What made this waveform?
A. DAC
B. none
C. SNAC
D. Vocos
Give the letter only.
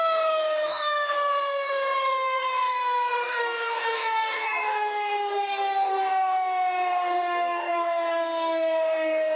A